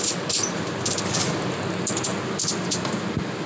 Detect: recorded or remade recorded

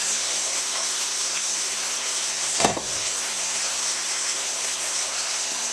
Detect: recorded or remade remade